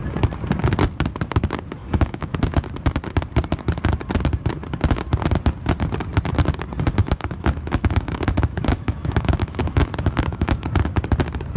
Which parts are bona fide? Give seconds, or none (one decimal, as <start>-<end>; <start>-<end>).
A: 0.0-1.8; 2.4-7.0; 10.7-11.6

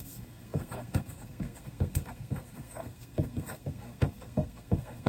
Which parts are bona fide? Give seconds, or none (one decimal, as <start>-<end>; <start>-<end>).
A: none

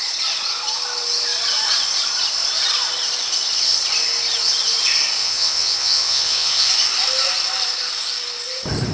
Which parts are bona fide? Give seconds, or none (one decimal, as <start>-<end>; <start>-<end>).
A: 0.0-5.2; 6.7-8.9

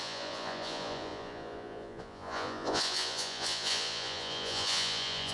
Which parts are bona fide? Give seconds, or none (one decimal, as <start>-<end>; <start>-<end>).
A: none

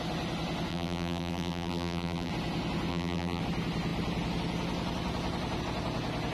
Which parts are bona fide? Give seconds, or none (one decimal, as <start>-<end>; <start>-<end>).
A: 0.0-0.7; 2.3-2.9; 3.4-6.3

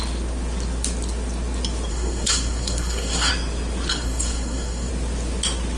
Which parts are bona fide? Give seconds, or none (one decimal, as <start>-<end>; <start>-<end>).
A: 0.0-1.9; 3.3-3.9; 4.9-5.8